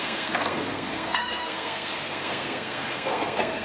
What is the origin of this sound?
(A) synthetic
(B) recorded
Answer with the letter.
A